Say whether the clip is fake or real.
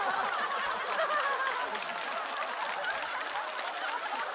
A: real